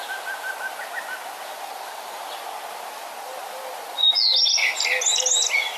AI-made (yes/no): no